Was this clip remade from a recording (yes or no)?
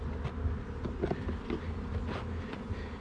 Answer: no